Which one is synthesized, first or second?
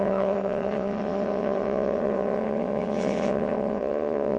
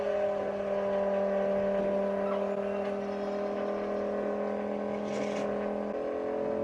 first